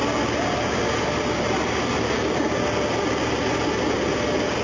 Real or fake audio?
real